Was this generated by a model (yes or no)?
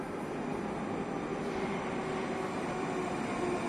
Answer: no